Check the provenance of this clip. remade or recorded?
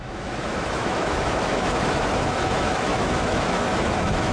remade